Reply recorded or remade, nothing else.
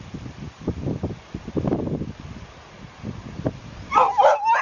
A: recorded